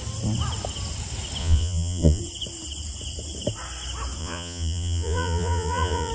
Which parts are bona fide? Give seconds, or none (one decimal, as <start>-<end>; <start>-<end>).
0.0-1.4; 2.2-4.2